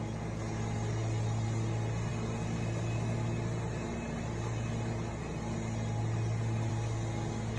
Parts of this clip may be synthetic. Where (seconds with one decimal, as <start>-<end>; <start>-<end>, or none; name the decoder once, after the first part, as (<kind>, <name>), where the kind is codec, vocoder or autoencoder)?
none